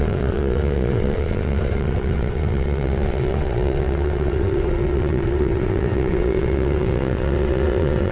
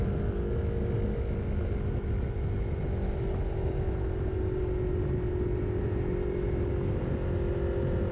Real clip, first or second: second